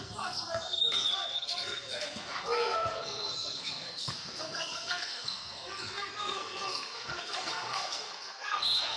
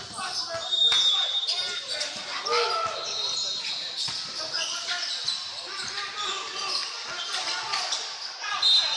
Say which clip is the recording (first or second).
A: second